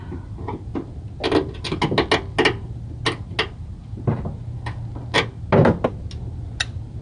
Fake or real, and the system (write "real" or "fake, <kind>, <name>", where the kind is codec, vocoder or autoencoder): real